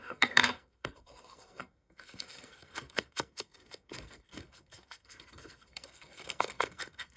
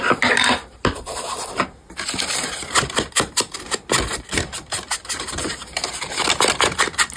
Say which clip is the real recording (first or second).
second